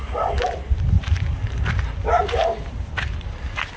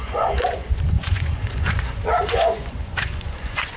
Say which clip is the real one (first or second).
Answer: first